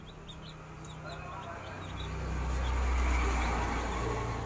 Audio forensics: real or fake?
real